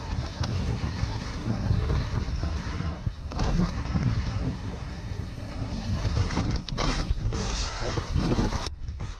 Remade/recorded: remade